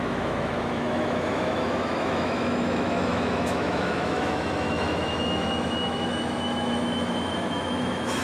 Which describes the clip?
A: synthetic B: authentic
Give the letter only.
A